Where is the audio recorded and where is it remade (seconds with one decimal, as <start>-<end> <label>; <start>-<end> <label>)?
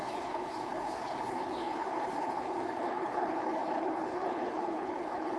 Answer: 0.0-5.4 remade